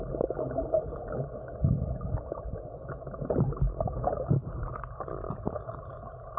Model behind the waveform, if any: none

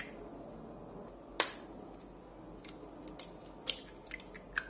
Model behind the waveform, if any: none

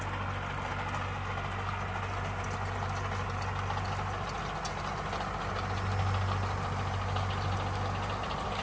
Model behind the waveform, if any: none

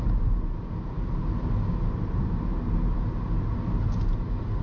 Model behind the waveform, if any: none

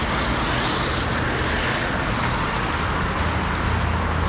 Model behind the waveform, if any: none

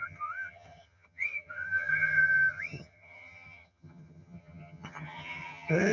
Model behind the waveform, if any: vocoder, HiFi-GAN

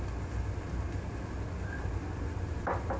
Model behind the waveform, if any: none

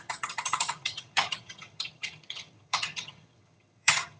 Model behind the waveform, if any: vocoder, HiFi-GAN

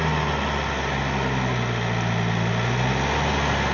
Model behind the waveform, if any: none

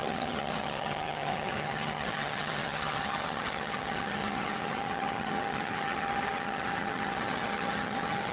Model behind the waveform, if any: vocoder, HiFi-GAN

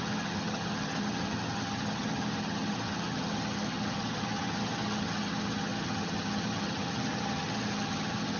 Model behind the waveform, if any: vocoder, HiFi-GAN